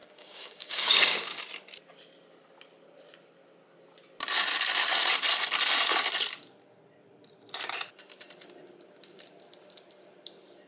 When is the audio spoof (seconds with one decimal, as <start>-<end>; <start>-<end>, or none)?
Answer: 0.0-1.4